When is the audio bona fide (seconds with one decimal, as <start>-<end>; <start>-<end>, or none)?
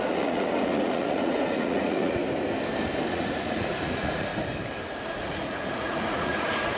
2.2-3.1; 4.3-5.0